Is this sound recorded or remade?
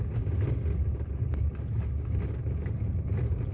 recorded